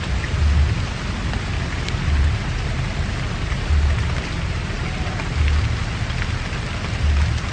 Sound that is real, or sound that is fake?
real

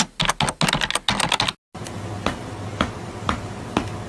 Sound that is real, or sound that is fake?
real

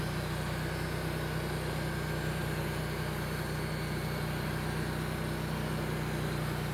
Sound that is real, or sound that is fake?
real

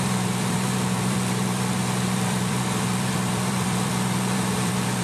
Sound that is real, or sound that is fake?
fake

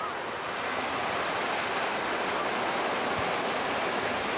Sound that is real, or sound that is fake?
real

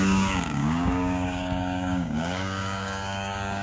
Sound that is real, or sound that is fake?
fake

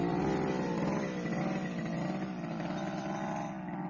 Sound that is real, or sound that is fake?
real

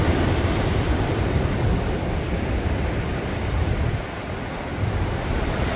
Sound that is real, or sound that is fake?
fake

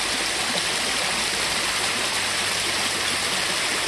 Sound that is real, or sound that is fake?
real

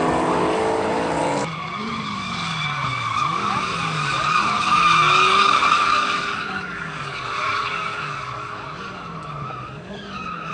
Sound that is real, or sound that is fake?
fake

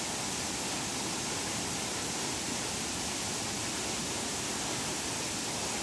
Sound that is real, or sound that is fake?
real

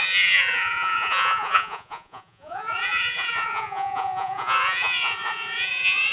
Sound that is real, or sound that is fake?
fake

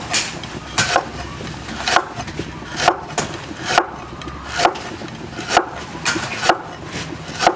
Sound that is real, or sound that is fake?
real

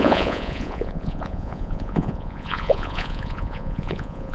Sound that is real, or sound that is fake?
fake